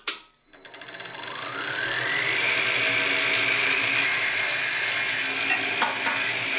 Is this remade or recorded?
recorded